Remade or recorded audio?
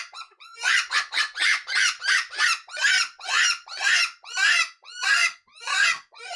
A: remade